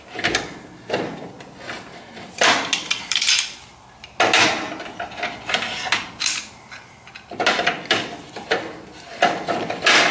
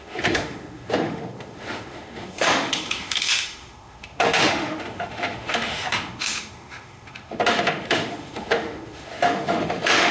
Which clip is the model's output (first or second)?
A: second